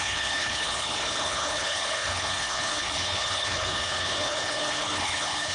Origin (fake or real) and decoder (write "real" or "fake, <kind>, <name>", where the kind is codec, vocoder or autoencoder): fake, codec, HILCodec